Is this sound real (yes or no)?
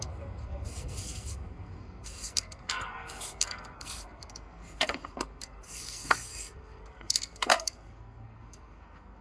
no